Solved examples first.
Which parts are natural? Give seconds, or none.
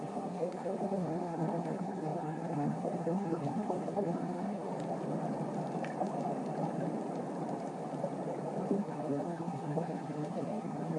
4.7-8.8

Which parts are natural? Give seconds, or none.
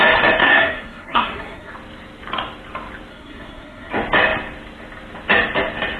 0.0-0.4; 1.7-3.1; 3.9-6.0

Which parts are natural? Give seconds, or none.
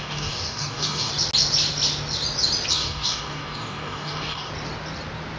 1.1-2.7; 4.5-5.4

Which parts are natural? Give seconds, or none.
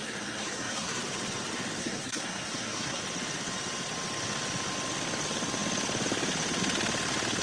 1.0-1.8; 3.0-7.4